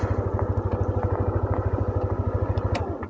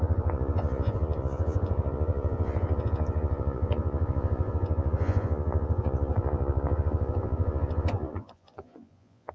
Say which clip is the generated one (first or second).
second